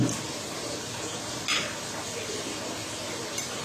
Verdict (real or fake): real